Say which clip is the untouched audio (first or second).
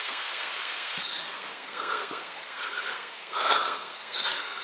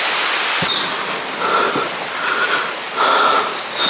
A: second